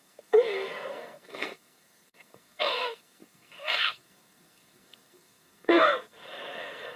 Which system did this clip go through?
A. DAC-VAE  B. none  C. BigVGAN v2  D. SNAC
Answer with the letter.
D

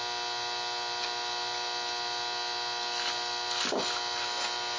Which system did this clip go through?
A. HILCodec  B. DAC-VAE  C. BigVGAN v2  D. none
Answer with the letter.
D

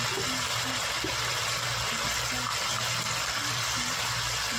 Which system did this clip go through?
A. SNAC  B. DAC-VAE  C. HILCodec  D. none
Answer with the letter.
D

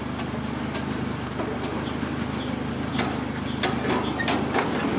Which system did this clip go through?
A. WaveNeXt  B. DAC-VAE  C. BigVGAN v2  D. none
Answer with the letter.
D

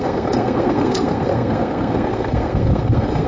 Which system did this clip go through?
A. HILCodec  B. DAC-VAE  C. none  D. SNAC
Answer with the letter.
D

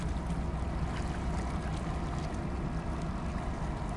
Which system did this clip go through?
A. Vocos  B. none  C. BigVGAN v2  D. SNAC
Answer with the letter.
B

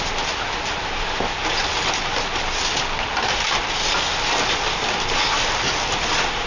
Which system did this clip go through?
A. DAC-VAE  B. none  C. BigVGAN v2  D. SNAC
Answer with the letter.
B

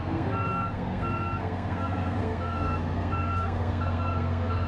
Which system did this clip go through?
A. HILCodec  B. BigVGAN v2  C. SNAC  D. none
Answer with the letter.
C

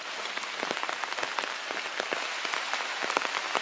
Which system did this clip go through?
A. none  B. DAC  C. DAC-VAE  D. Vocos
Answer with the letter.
A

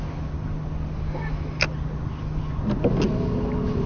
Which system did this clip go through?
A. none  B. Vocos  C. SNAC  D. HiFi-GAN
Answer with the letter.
A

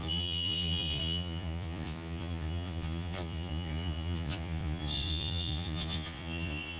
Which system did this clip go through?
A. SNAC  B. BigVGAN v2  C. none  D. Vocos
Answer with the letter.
D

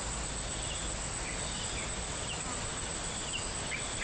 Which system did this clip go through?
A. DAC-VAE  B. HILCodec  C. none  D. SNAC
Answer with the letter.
C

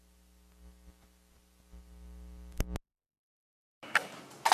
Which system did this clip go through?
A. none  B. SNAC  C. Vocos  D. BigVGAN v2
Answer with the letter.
A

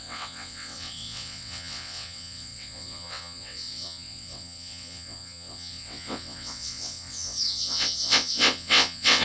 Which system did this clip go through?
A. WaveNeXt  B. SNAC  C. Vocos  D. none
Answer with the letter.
A